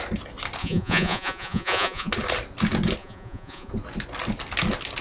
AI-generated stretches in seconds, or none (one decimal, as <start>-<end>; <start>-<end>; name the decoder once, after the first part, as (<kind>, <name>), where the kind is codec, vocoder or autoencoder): 0.6-2.1 (vocoder, Vocos); 3.0-3.7